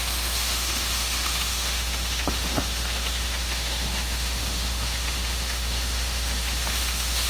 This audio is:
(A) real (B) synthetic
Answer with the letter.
B